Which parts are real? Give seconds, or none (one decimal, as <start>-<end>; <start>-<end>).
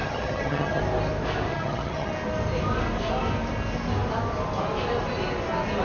0.8-1.5; 2.1-5.8